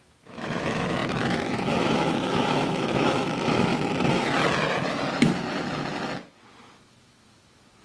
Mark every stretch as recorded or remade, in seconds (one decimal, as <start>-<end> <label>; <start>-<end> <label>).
0.0-3.7 remade; 3.7-6.6 recorded; 6.6-7.8 remade